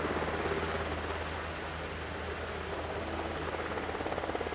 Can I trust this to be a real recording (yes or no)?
yes